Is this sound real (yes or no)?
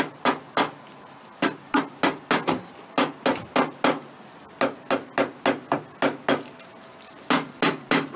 yes